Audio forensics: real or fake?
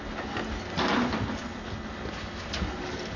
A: real